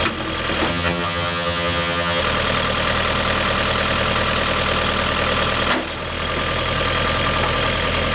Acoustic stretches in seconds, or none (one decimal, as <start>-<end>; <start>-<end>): 0.0-0.7; 2.2-8.1